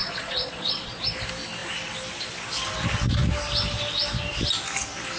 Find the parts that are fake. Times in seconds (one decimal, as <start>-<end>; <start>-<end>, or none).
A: 0.0-1.0